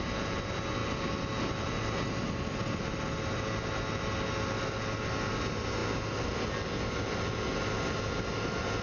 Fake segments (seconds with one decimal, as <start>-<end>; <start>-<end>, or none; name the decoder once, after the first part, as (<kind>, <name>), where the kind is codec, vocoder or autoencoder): none